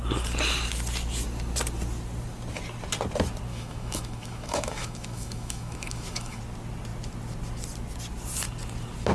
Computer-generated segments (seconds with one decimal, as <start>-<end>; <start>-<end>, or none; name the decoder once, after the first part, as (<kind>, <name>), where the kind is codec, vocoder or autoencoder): 3.5-6.4 (autoencoder, DAC-VAE)